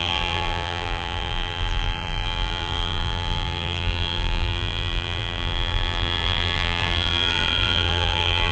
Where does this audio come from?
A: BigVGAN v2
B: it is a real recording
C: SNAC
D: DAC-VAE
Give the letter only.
A